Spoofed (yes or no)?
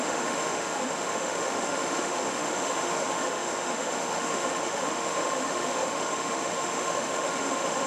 yes